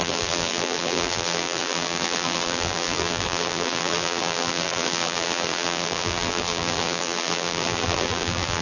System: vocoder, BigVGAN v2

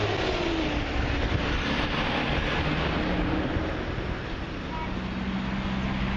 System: none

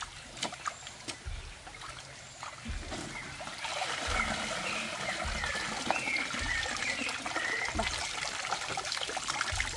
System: none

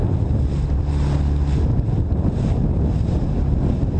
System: none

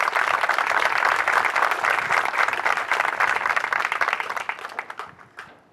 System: none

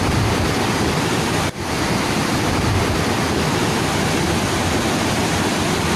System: vocoder, BigVGAN v2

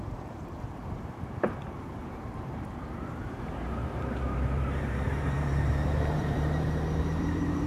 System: vocoder, BigVGAN v2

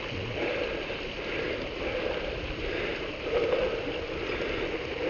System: none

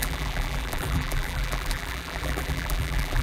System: vocoder, BigVGAN v2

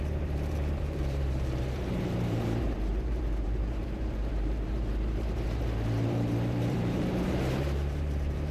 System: vocoder, BigVGAN v2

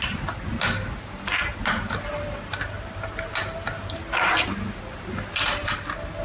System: none